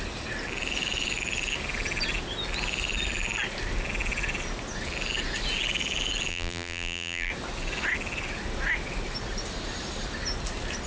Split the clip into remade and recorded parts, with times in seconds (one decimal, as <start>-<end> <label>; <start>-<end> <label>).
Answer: 0.0-6.3 recorded; 6.3-7.3 remade; 7.3-10.9 recorded